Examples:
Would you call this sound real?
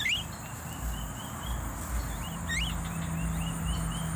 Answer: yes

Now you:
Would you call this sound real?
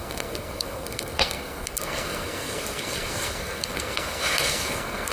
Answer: no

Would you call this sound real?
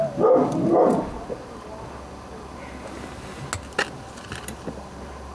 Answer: yes